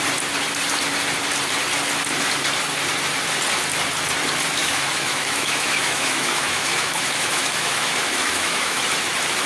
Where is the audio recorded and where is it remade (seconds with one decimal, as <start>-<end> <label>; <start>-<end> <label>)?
0.0-4.6 recorded; 4.6-8.8 remade; 8.8-9.5 recorded